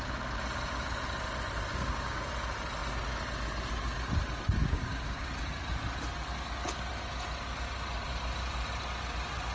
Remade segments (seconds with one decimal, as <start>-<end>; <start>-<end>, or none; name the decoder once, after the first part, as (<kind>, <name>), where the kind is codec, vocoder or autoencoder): 1.7-2.2 (codec, DAC); 4.6-5.2

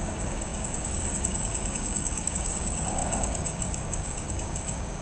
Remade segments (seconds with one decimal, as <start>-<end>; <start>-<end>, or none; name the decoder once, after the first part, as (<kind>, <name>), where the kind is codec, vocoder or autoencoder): 0.0-5.0 (codec, DAC)

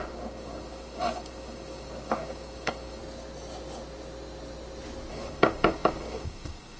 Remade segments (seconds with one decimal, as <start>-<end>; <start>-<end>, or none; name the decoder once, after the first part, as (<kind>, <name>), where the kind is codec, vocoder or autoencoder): 0.0-3.0 (codec, DAC); 5.1-6.8

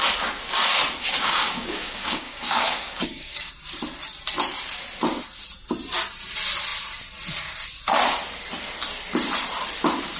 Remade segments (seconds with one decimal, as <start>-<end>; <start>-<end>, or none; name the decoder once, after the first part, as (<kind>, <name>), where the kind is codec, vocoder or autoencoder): 1.0-3.5 (codec, DAC)

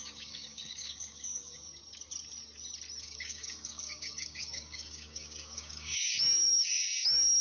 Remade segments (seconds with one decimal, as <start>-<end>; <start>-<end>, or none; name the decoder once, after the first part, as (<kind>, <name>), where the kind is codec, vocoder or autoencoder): 0.0-1.7 (codec, DAC); 3.0-7.4

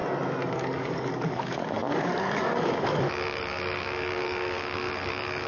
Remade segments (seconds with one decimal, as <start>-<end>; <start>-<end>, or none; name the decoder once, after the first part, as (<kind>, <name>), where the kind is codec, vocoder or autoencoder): 0.5-5.5 (codec, DAC)

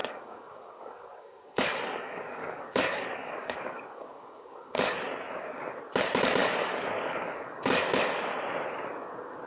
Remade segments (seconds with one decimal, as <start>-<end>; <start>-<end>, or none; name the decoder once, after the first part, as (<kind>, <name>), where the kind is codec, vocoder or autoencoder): 0.0-5.0 (codec, DAC); 6.4-7.8